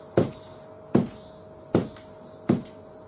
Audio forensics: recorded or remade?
recorded